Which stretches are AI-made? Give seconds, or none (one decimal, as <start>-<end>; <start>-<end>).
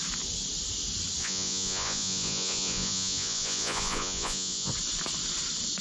1.2-4.7